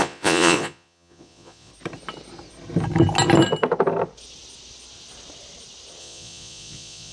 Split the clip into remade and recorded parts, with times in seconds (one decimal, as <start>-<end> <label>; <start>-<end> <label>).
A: 0.0-1.7 remade; 1.7-6.0 recorded; 6.0-7.1 remade